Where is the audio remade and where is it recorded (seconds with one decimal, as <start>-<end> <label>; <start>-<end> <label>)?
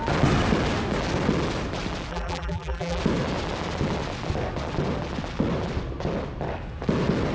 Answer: 0.0-2.1 recorded; 2.1-3.0 remade; 3.0-7.3 recorded